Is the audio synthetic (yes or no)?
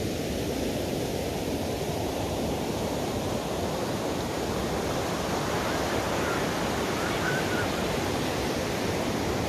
yes